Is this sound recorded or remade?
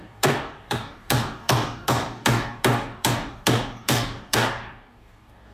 remade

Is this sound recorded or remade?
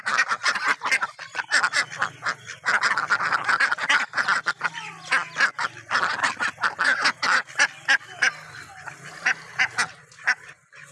recorded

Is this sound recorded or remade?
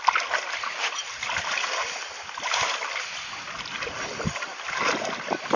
recorded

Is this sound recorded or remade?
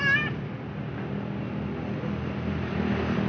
recorded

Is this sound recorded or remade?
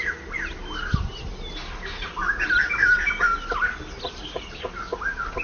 recorded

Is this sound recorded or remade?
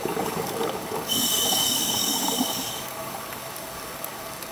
remade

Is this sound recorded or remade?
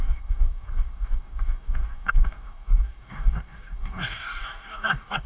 remade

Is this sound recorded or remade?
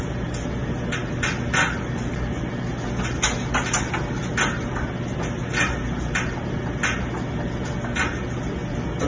recorded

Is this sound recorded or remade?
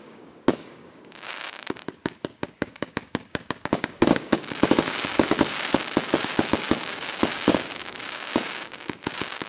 remade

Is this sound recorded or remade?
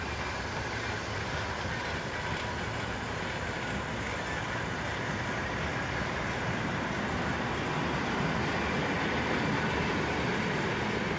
recorded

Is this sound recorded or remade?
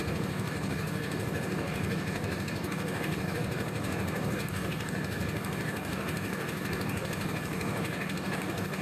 remade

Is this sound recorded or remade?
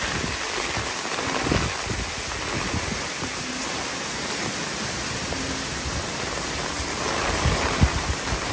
recorded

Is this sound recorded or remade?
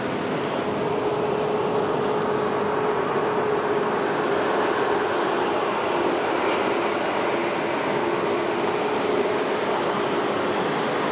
recorded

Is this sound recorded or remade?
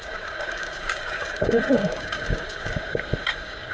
remade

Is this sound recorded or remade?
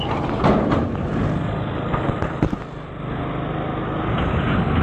recorded